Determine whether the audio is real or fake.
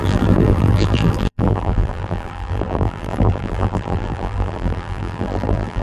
fake